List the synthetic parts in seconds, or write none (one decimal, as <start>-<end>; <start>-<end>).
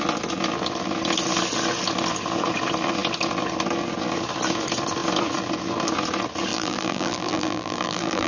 6.5-8.3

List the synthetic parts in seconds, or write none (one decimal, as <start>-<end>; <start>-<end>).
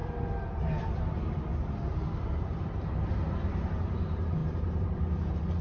2.2-2.8; 4.4-5.6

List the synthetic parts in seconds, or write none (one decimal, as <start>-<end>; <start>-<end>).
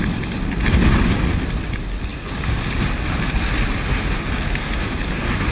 none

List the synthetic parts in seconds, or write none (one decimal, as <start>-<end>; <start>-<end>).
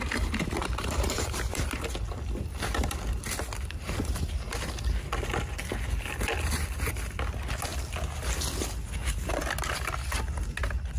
0.6-1.7